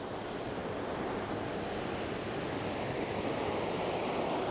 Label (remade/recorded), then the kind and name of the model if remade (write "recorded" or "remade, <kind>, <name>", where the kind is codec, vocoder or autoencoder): recorded